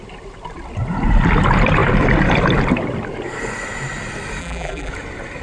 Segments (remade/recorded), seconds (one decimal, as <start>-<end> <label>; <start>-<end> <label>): 0.0-4.4 recorded; 4.4-4.9 remade; 4.9-5.4 recorded